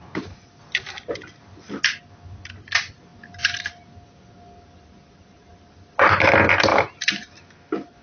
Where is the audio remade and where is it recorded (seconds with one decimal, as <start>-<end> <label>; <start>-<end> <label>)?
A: 0.0-6.7 recorded; 6.7-7.3 remade; 7.3-8.0 recorded